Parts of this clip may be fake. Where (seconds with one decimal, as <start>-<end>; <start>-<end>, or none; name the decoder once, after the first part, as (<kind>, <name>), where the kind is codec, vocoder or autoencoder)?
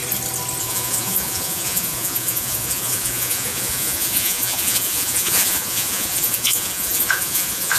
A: 0.6-7.8 (vocoder, Vocos)